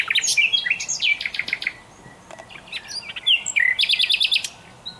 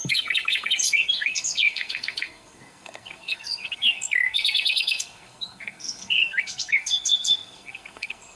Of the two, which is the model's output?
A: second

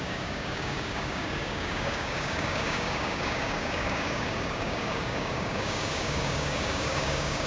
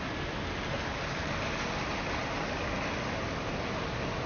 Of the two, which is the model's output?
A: first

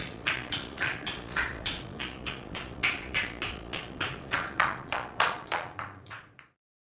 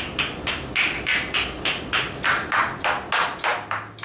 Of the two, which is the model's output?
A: first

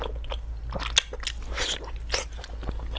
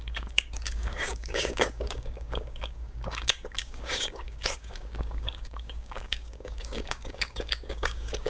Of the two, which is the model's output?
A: second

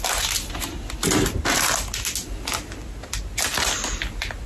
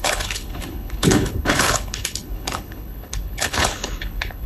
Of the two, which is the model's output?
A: second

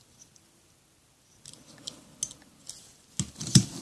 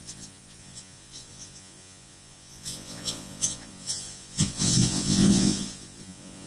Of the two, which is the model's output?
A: second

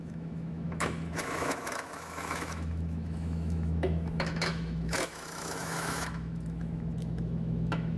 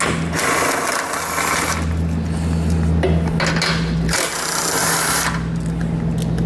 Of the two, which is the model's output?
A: first